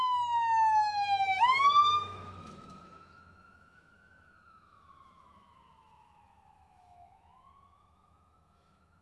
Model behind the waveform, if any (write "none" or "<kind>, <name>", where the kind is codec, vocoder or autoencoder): autoencoder, DAC-VAE